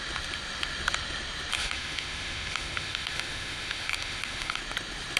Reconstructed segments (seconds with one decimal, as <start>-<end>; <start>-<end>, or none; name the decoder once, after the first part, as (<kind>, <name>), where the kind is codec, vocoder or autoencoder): 1.5-4.6 (autoencoder, DAC-VAE)